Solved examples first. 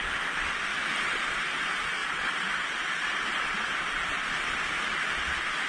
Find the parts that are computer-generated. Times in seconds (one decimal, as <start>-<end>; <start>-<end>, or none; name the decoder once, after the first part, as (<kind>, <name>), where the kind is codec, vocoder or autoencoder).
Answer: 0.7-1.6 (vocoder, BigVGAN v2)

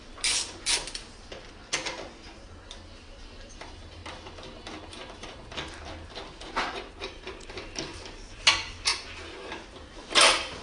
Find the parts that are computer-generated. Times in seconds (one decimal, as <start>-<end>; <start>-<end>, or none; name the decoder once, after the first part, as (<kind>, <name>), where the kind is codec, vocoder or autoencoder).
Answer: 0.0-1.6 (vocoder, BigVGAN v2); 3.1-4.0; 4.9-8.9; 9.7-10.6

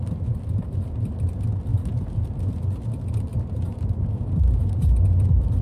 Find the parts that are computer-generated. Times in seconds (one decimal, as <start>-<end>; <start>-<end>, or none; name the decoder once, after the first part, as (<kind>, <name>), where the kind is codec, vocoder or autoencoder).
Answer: 3.3-4.8 (vocoder, BigVGAN v2)

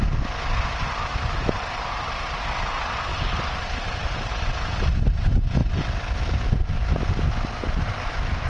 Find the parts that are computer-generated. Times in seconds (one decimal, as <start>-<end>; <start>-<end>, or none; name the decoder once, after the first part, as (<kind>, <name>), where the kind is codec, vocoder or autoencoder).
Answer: 1.1-2.4 (vocoder, BigVGAN v2); 3.1-4.3

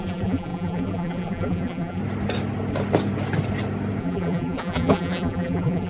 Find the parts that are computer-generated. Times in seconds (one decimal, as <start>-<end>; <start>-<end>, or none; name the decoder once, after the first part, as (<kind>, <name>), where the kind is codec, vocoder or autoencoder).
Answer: 0.0-2.0 (vocoder, BigVGAN v2); 4.0-5.9